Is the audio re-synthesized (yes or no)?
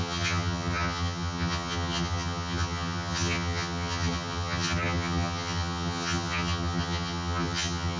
yes